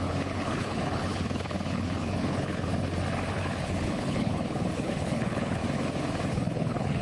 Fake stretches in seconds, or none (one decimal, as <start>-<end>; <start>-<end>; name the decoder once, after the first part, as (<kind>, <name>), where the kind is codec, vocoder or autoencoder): 0.0-2.7 (codec, HILCodec); 3.3-5.6; 6.3-7.0